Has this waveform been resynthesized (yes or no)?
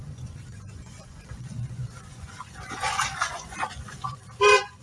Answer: yes